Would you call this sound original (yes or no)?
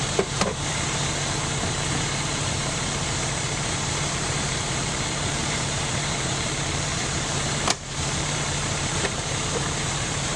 no